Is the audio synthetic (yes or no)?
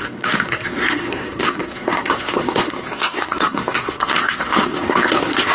yes